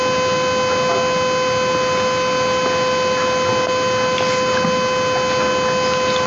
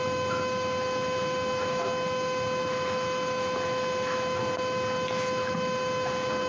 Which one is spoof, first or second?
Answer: second